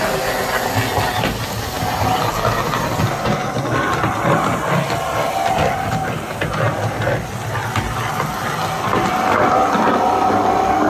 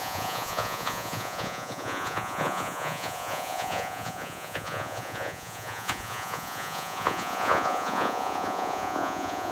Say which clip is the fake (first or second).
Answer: second